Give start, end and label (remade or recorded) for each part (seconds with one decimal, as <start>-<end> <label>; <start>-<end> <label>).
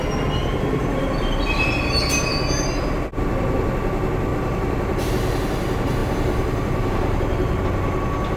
0.0-0.8 recorded; 0.8-1.8 remade; 1.8-4.3 recorded; 4.3-5.1 remade; 5.1-6.0 recorded; 6.0-7.6 remade; 7.6-8.4 recorded